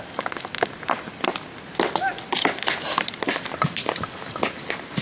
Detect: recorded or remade recorded